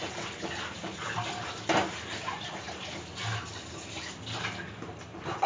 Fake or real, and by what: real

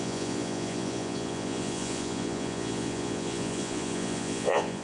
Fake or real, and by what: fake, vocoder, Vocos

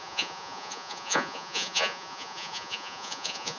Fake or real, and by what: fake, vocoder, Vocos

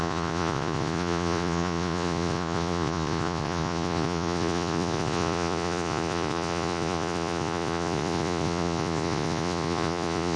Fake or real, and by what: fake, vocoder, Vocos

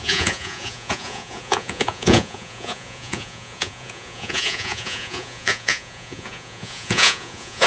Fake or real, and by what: fake, vocoder, Vocos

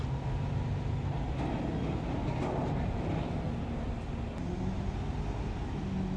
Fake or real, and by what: real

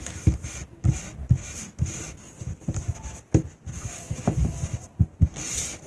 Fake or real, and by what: real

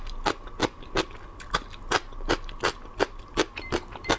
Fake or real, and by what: real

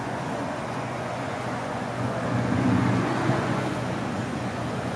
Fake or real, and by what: fake, vocoder, Vocos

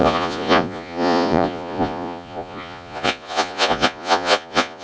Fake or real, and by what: fake, vocoder, Vocos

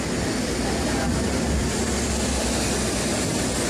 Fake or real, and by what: real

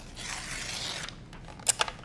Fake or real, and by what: real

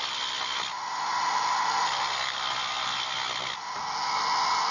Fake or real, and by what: real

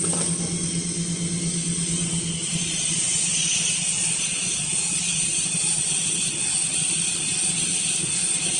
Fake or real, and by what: real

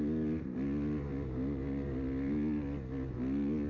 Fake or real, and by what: real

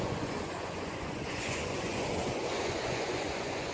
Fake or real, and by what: fake, vocoder, Vocos